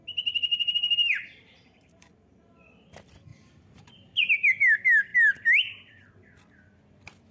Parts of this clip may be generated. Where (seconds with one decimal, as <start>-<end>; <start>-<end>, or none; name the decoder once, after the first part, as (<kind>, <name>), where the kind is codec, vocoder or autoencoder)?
0.5-2.1 (vocoder, BigVGAN v2); 3.3-4.3